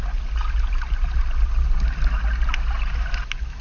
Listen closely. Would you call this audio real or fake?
real